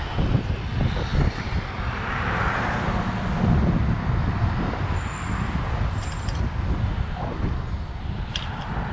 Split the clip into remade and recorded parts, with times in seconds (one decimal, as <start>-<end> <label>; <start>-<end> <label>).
0.0-1.1 recorded; 1.1-3.1 remade; 3.1-8.9 recorded